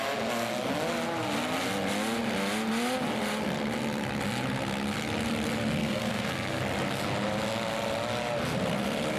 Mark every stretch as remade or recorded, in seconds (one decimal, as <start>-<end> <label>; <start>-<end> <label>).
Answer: 0.0-5.8 recorded; 5.8-6.6 remade; 6.6-9.2 recorded

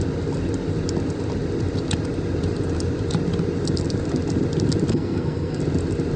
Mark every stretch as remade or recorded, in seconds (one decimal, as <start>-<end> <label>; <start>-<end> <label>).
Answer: 0.0-4.9 recorded; 4.9-5.6 remade; 5.6-6.2 recorded

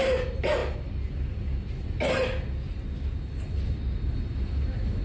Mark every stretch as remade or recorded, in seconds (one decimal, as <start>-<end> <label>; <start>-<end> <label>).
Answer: 0.0-5.0 recorded